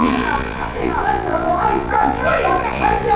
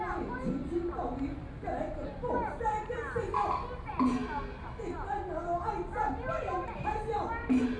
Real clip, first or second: second